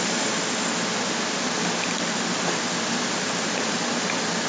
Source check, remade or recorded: recorded